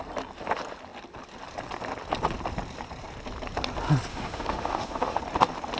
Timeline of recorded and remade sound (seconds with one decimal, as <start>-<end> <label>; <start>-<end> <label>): 0.0-4.1 recorded; 4.1-5.2 remade; 5.2-5.8 recorded